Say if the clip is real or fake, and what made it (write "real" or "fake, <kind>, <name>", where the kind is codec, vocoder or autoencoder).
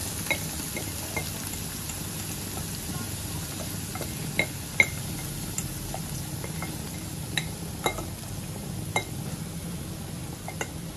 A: real